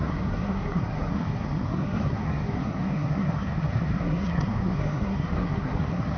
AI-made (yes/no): yes